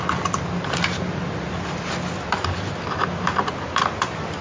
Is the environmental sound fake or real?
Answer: real